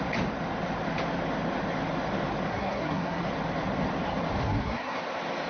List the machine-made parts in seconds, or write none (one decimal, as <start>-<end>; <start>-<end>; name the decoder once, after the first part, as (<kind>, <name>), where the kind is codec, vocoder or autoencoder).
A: 2.5-3.3 (codec, SNAC); 4.4-5.0